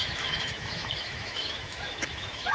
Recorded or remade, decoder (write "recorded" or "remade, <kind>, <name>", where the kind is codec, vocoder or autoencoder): remade, autoencoder, DAC-VAE